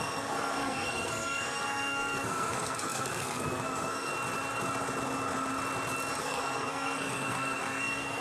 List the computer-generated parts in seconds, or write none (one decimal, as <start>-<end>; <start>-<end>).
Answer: 0.0-4.1; 6.2-8.2